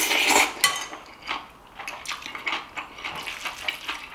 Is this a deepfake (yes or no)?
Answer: no